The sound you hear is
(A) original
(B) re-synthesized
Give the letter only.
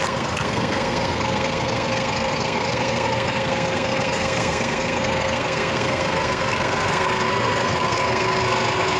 B